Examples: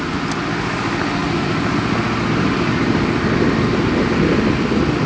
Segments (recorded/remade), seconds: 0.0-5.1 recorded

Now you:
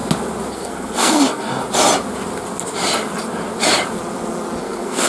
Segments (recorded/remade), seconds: 0.0-0.5 recorded; 0.5-1.5 remade; 1.5-4.6 recorded; 4.6-5.1 remade

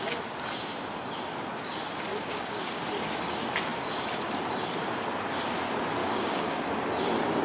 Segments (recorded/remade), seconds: 0.0-2.1 recorded; 2.1-2.8 remade; 2.8-6.0 recorded; 6.0-6.7 remade; 6.7-7.4 recorded

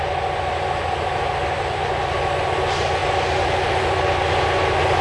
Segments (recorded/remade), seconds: 0.0-5.0 recorded

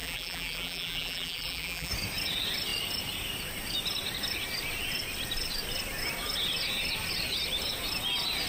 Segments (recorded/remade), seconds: 0.0-1.9 remade; 1.9-8.5 recorded

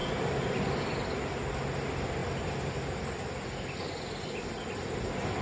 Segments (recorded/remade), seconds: 0.0-5.4 recorded

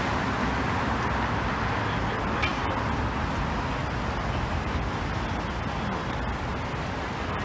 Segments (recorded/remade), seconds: 0.0-7.4 recorded

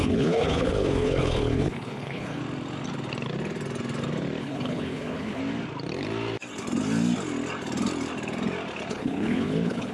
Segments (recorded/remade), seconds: 0.0-2.4 remade; 2.4-4.4 recorded; 4.4-5.4 remade; 5.4-8.9 recorded; 8.9-9.9 remade